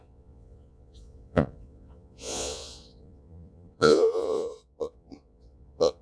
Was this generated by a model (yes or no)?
yes